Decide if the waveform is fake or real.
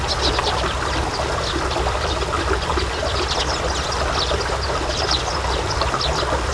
real